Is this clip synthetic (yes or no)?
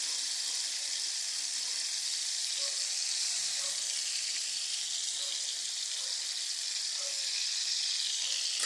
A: no